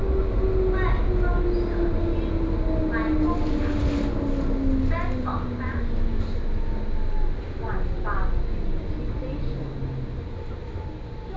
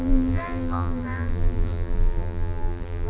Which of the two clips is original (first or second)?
first